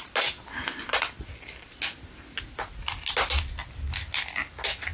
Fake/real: real